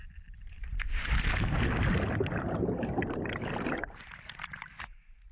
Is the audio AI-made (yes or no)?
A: no